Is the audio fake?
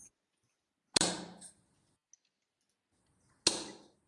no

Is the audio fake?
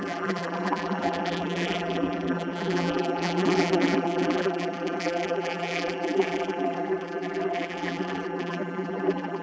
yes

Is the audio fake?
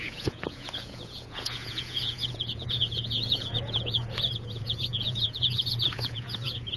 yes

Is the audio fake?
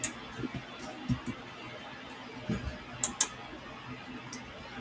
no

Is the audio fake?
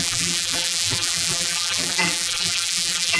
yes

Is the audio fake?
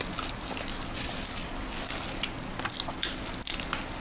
no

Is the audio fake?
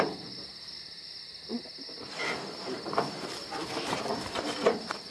yes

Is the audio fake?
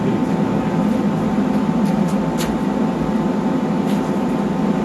no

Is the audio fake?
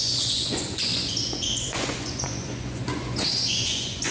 yes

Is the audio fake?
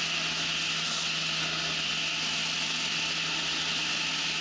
no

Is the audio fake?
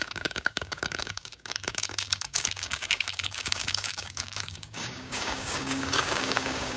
yes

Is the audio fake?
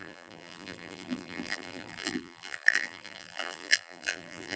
yes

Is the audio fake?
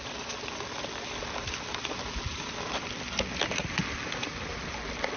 no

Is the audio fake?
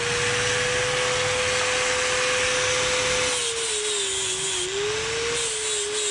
no